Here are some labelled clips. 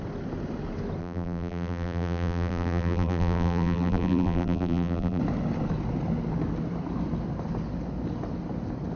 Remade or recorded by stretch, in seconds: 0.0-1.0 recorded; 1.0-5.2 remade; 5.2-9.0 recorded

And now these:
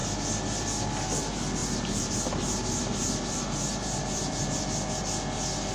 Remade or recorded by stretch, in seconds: 0.0-1.6 recorded; 1.6-5.0 remade; 5.0-5.7 recorded

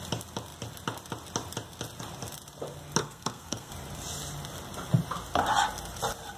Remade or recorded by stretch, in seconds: 0.0-3.0 recorded; 3.0-3.7 remade; 3.7-6.4 recorded

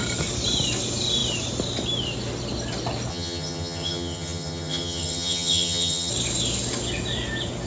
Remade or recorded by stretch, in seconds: 0.0-3.1 recorded; 3.1-6.1 remade; 6.1-7.7 recorded

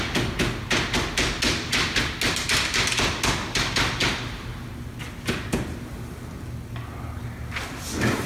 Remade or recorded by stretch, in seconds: 0.0-8.3 recorded

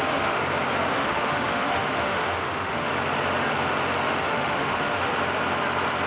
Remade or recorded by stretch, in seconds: 0.0-0.4 remade; 0.4-0.9 recorded; 0.9-2.9 remade; 2.9-4.2 recorded; 4.2-5.1 remade; 5.1-6.1 recorded

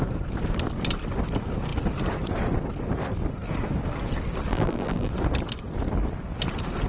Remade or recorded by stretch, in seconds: 0.0-4.5 recorded; 4.5-5.1 remade; 5.1-6.9 recorded

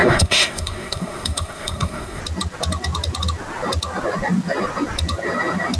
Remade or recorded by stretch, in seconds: 0.0-2.2 remade; 2.2-5.8 recorded